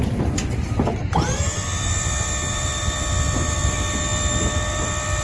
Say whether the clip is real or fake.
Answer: fake